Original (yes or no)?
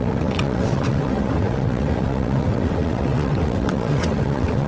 no